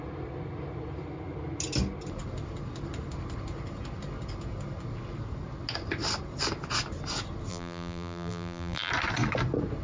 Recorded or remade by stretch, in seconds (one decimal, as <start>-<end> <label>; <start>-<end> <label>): 0.0-7.5 recorded; 7.5-8.9 remade; 8.9-9.8 recorded